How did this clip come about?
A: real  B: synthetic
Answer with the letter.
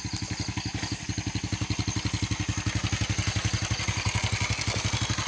A